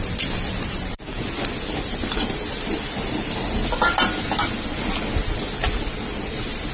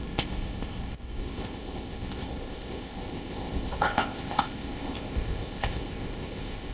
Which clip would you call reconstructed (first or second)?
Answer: second